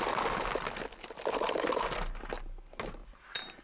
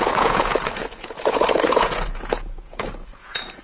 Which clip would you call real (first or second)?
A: first